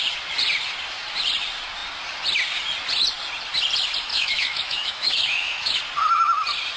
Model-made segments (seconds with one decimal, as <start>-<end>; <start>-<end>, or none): 4.1-5.8